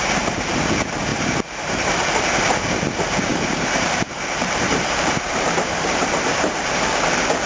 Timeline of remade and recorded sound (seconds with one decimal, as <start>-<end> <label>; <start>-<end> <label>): 0.0-1.1 recorded; 1.1-2.1 remade; 2.1-3.3 recorded; 3.3-6.8 remade; 6.8-7.5 recorded